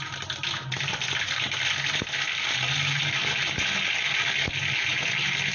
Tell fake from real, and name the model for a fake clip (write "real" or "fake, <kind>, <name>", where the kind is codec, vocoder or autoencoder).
real